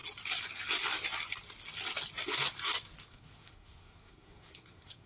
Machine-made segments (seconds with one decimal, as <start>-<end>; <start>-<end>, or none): 3.1-5.1